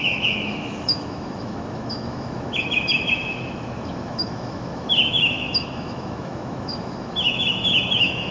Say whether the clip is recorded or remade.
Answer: remade